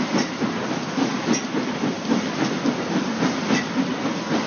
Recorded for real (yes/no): yes